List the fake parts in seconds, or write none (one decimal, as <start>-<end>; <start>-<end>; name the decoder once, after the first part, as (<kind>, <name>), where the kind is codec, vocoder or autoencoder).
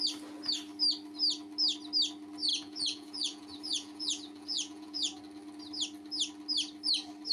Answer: 2.5-5.2 (vocoder, Vocos)